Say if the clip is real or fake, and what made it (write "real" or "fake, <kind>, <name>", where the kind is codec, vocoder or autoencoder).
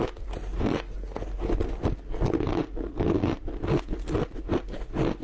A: real